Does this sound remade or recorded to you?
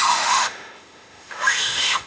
remade